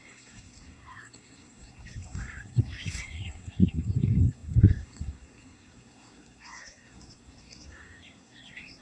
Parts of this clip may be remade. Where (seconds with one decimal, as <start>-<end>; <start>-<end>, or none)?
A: 0.0-8.8